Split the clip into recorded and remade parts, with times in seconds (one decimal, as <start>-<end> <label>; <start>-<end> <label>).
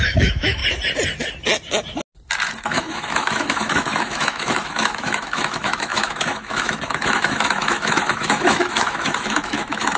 0.0-0.6 remade; 0.6-2.6 recorded; 2.6-10.0 remade